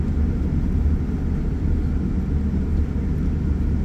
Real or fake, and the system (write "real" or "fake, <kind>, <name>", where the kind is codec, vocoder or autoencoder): real